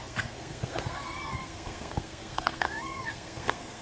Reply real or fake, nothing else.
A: fake